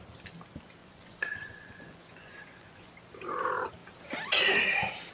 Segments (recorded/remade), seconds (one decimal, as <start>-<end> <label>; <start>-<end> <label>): 0.0-0.8 recorded; 0.8-2.9 remade; 2.9-5.1 recorded

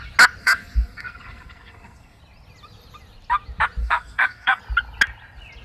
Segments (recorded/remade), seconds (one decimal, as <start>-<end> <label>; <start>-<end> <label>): 0.0-0.4 recorded; 0.4-2.2 remade; 2.2-3.8 recorded; 3.8-4.6 remade; 4.6-5.6 recorded

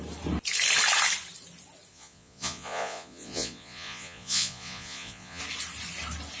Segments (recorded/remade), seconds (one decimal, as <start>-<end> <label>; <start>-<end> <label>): 0.0-1.9 recorded; 1.9-5.4 remade; 5.4-6.4 recorded

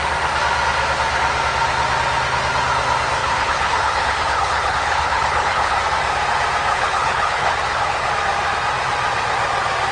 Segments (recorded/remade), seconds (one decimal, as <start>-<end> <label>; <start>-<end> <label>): 0.0-3.2 recorded; 3.2-5.8 remade; 5.8-6.7 recorded; 6.7-8.1 remade; 8.1-9.9 recorded

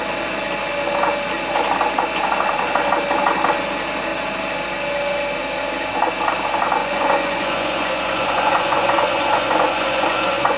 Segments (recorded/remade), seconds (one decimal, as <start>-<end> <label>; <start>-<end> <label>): 0.0-6.8 recorded; 6.8-10.6 remade